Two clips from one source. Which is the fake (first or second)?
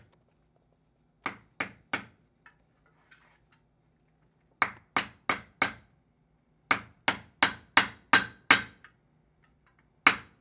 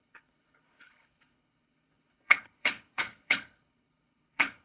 second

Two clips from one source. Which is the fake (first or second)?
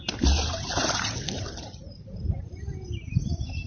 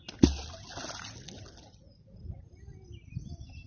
first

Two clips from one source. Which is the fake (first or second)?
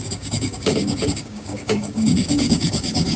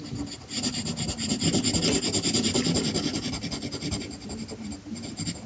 first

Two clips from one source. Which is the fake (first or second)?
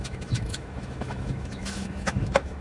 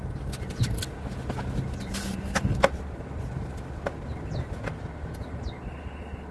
first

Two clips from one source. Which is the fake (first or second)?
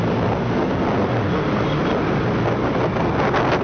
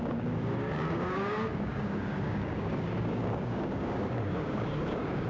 second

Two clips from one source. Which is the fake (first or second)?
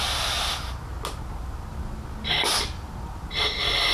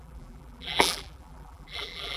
second